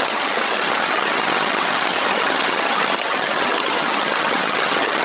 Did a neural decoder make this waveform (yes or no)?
yes